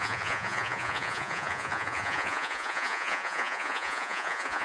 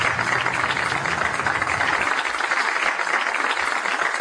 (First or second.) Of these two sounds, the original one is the second